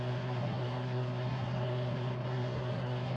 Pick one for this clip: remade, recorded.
remade